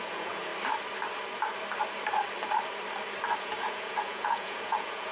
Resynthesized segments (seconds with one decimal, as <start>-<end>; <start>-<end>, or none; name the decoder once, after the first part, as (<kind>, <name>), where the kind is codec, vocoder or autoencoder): 0.0-0.5 (vocoder, Vocos); 3.4-5.1